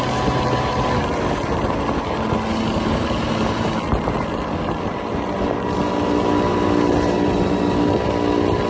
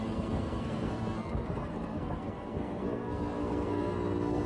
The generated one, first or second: second